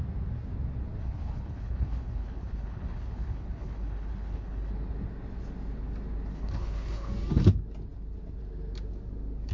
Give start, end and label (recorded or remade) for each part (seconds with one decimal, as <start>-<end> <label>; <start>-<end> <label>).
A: 0.0-1.0 recorded; 1.0-4.7 remade; 4.7-6.3 recorded; 6.3-7.1 remade; 7.1-9.5 recorded